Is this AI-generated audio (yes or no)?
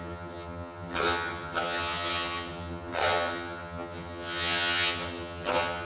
yes